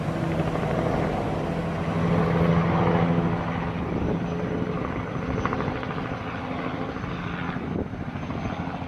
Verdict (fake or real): real